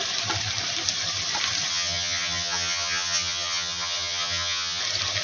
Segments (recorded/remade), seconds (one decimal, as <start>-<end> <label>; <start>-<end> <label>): 0.0-1.7 recorded; 1.7-4.8 remade; 4.8-5.2 recorded